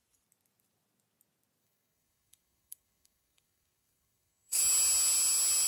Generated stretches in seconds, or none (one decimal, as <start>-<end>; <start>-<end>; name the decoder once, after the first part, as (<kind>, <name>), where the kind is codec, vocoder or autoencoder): 1.6-4.6 (codec, SNAC)